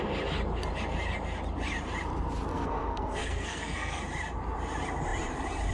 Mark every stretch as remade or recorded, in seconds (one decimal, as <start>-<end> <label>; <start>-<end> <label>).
0.0-2.5 recorded; 2.5-4.0 remade; 4.0-5.7 recorded